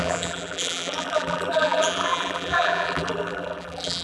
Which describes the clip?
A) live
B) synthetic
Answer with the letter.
B